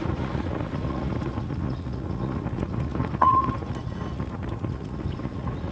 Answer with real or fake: fake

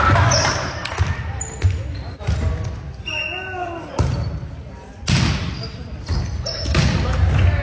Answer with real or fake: real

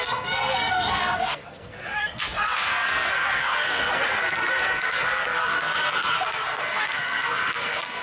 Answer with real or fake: fake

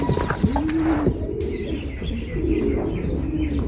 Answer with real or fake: real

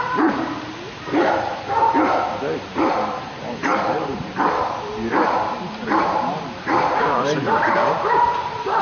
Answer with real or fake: fake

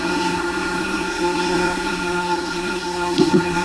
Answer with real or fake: fake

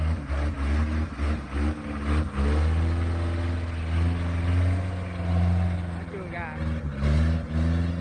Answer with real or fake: real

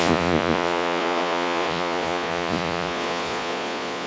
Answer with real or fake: fake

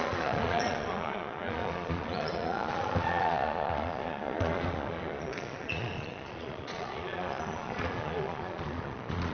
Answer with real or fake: fake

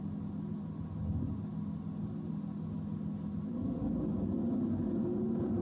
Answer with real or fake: real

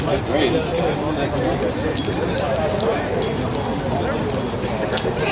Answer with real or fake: real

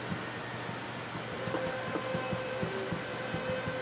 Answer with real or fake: real